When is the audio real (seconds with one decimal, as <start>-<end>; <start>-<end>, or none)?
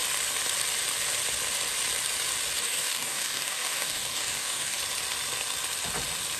0.0-2.6; 4.8-6.4